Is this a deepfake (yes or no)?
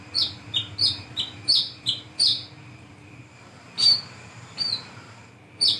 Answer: yes